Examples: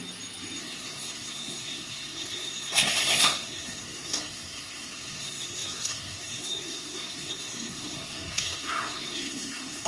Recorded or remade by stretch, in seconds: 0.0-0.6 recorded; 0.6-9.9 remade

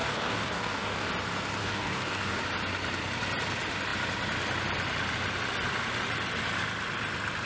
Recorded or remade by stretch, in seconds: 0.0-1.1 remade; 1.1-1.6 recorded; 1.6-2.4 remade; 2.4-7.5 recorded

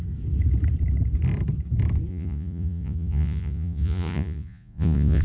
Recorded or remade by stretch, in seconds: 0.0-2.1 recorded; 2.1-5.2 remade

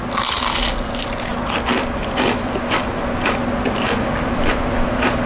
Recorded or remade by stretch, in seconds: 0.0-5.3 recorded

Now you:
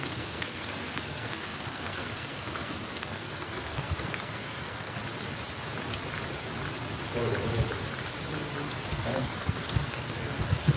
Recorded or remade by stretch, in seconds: 0.0-5.0 remade; 5.0-8.9 recorded; 8.9-10.8 remade